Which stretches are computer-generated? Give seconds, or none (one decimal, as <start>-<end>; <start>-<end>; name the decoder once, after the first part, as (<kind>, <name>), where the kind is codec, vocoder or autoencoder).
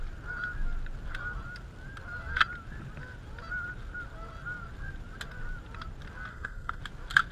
6.3-6.8 (codec, SNAC)